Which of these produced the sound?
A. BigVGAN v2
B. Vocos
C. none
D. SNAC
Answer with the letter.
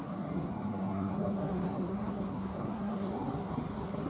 D